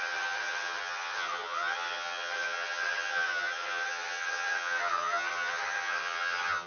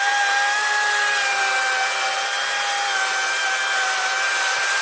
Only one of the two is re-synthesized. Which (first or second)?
first